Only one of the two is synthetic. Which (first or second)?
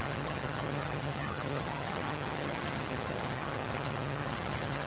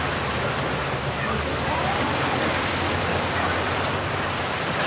first